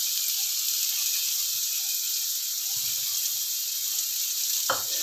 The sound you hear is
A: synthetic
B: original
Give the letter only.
B